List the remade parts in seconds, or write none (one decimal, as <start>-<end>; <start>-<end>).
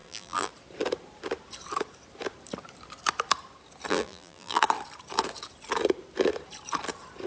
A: 0.0-0.5; 3.9-4.6